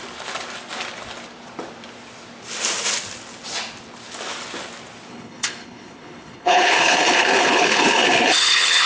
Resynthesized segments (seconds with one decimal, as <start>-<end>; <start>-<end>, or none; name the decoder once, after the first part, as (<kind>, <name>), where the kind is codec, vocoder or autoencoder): 5.1-8.9 (codec, HILCodec)